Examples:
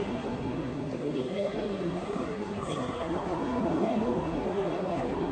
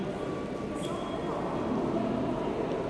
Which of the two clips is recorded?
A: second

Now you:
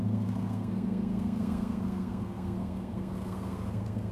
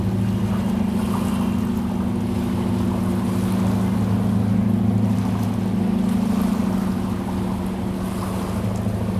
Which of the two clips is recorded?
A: second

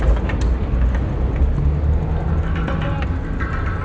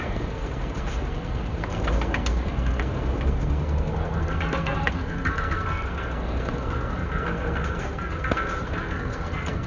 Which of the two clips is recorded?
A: first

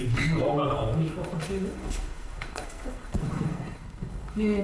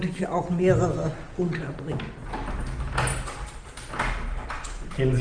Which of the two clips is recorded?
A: second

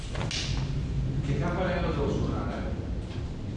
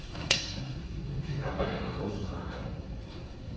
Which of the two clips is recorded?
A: first